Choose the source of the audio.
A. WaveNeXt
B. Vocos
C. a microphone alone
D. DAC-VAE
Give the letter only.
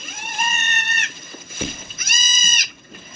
A